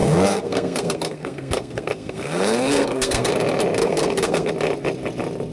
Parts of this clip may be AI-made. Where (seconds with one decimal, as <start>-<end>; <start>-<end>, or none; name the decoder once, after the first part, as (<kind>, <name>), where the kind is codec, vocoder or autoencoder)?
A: 0.0-3.3 (codec, SNAC); 3.8-4.5